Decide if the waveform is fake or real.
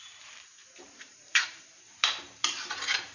fake